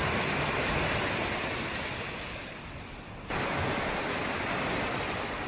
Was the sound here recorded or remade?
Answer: recorded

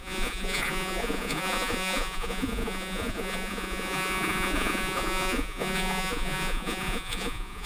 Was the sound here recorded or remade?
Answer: remade